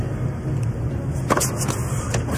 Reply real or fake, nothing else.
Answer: real